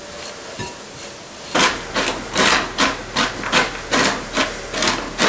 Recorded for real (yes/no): yes